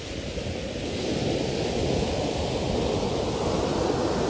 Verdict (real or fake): real